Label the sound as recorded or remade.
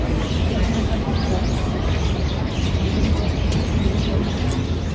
recorded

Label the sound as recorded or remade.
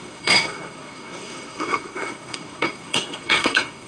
remade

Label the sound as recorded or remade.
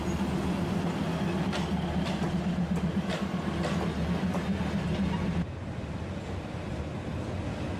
recorded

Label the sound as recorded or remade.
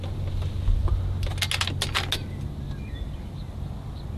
recorded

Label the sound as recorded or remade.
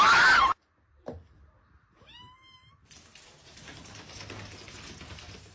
recorded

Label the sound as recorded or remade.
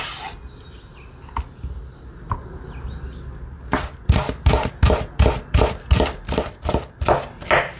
recorded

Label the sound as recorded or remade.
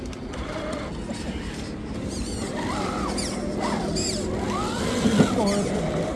recorded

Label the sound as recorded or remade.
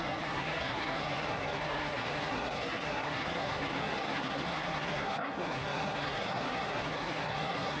remade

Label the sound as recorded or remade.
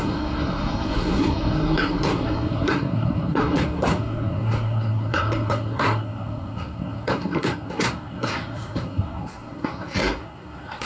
remade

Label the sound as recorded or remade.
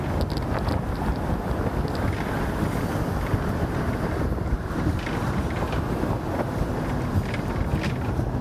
recorded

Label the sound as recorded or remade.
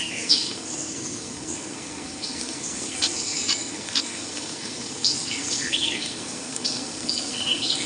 remade